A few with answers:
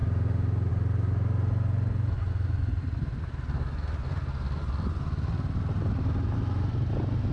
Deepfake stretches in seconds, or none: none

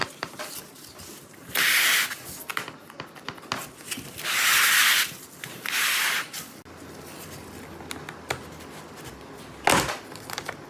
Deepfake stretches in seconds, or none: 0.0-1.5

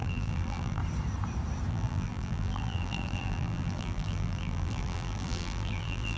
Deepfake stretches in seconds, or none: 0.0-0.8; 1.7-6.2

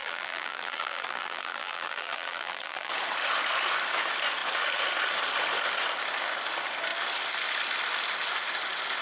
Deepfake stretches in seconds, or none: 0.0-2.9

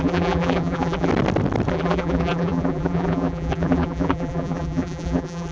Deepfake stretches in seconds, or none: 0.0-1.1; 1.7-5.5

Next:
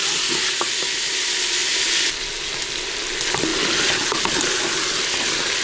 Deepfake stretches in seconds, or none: 1.6-2.1; 3.5-4.6

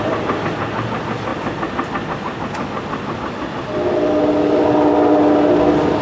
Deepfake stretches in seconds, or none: none

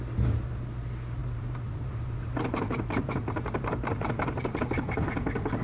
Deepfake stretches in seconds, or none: 1.2-4.6